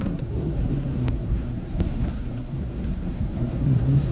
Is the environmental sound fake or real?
fake